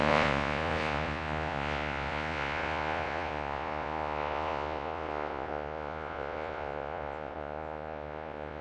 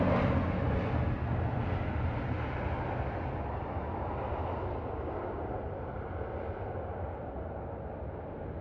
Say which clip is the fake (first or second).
first